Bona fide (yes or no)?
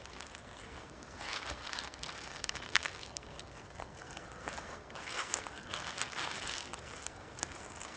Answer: no